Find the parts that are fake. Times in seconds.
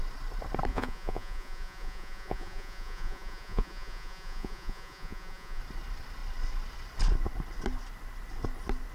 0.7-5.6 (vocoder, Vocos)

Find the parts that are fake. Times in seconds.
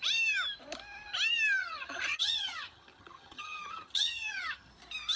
1.6-4.7 (vocoder, HiFi-GAN)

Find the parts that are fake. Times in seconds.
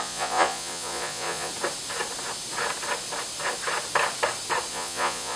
0.0-1.5 (vocoder, Vocos); 4.7-5.4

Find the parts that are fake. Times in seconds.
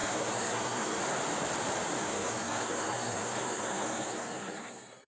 0.0-1.0 (codec, SNAC); 2.0-5.1